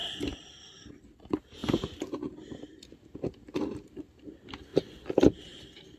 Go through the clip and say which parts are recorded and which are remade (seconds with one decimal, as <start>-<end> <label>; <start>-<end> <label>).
0.0-4.7 remade; 4.7-5.6 recorded; 5.6-6.0 remade